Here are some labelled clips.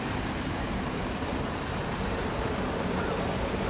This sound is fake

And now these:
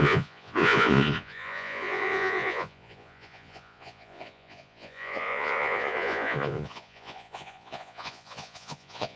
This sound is fake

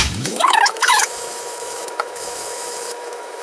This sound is fake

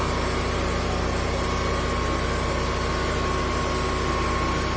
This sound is real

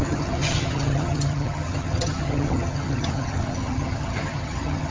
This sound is fake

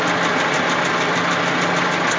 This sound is real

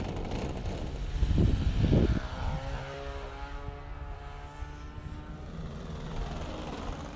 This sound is real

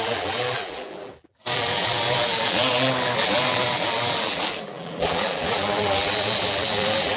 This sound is fake